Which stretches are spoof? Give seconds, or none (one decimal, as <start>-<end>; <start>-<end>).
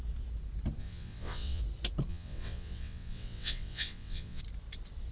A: 0.8-1.6; 2.1-4.4